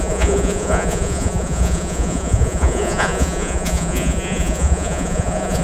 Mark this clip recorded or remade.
remade